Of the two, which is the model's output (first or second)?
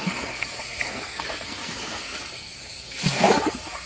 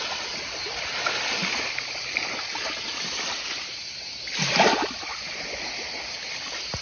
first